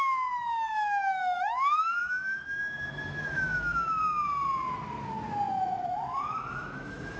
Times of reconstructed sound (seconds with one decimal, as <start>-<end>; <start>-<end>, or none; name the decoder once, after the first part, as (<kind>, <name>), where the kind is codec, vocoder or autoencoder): 0.0-4.0 (autoencoder, DAC-VAE); 5.5-7.2